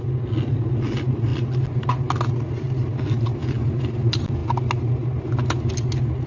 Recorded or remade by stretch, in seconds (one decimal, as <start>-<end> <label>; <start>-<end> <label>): 0.0-6.3 recorded